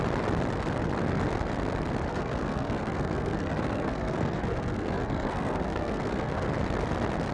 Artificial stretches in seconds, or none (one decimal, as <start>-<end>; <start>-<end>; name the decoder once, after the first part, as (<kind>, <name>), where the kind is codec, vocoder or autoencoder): 2.1-6.5 (codec, SNAC)